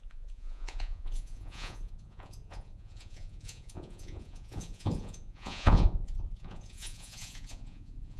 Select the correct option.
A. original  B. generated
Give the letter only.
B